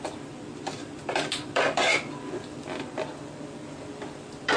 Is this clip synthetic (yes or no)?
yes